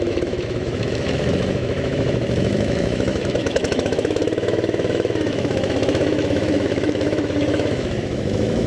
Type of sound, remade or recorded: remade